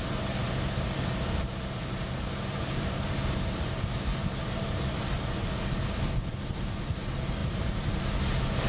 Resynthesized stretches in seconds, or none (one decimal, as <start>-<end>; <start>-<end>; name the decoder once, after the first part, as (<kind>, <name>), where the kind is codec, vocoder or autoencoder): 0.4-5.1 (vocoder, BigVGAN v2); 7.4-8.0